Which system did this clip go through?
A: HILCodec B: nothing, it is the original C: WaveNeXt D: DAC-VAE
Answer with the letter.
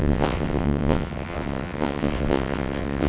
C